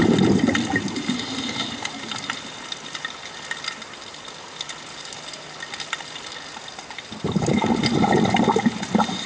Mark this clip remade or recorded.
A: recorded